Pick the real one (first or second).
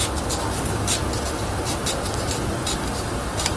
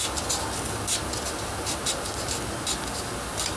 second